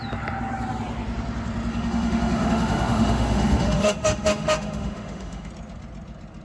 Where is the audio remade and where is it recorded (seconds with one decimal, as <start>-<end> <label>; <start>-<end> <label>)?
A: 0.0-1.7 recorded; 1.7-5.5 remade; 5.5-6.4 recorded